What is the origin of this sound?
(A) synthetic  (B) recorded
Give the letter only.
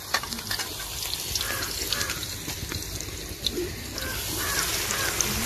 B